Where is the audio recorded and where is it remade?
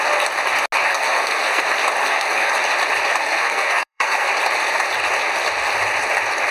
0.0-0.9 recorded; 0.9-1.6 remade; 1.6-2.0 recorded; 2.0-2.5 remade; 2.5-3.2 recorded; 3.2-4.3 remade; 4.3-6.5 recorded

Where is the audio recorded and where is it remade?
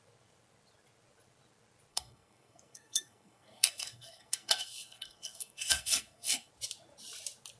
0.0-1.9 recorded; 1.9-6.5 remade; 6.5-7.6 recorded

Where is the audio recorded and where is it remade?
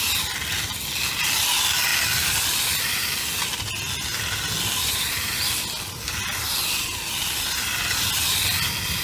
0.0-9.0 recorded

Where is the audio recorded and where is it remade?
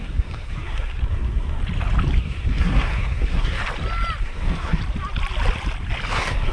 0.0-1.6 remade; 1.6-2.2 recorded; 2.2-3.6 remade; 3.6-4.2 recorded; 4.2-4.8 remade; 4.8-6.1 recorded; 6.1-6.5 remade